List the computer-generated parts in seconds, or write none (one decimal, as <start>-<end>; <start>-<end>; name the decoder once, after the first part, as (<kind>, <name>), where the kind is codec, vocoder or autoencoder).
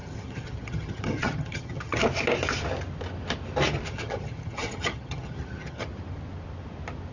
0.0-2.0 (vocoder, HiFi-GAN); 3.9-5.9